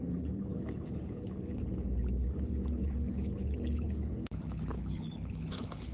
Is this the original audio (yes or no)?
no